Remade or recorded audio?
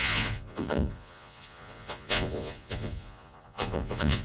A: remade